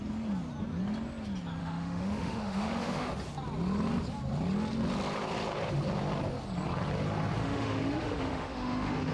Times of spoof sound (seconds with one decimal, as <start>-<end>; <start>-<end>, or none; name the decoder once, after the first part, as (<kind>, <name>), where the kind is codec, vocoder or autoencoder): 1.6-3.1 (autoencoder, DAC-VAE); 7.4-9.1